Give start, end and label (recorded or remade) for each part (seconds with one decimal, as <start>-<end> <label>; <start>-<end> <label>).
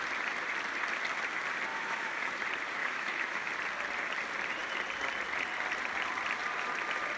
0.0-1.7 recorded; 1.7-2.3 remade; 2.3-2.8 recorded; 2.8-3.5 remade; 3.5-7.2 recorded